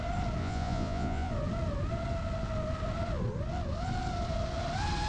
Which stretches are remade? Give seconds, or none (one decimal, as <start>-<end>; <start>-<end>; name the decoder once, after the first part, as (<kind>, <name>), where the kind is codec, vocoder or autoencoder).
0.4-1.3 (vocoder, Vocos)